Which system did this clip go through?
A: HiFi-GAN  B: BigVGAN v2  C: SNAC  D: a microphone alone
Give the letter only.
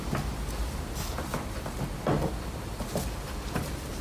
D